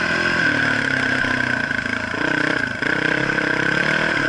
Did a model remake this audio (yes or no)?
no